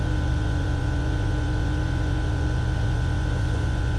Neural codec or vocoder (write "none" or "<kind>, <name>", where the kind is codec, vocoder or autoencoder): vocoder, Vocos